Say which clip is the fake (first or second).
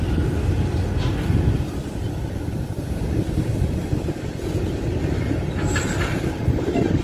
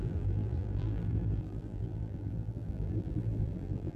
second